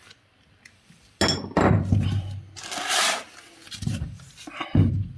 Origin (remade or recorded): recorded